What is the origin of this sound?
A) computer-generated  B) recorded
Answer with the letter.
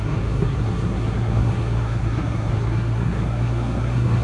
A